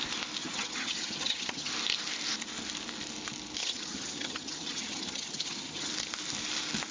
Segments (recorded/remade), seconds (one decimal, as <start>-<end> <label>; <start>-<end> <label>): 0.0-0.4 recorded; 0.4-1.7 remade; 1.7-3.6 recorded; 3.6-5.9 remade; 5.9-6.9 recorded